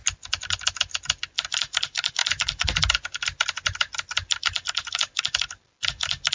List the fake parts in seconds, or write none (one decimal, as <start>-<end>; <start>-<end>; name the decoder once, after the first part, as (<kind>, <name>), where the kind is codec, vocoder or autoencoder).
none